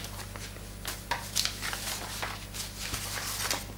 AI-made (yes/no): no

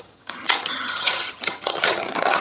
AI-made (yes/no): yes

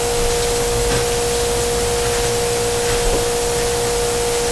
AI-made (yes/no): no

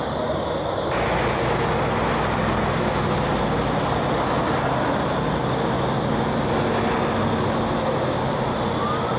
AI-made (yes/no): no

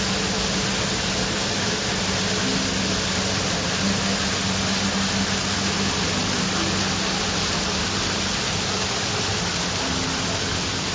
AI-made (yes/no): no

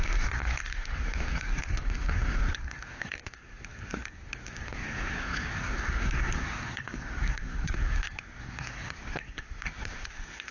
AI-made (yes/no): yes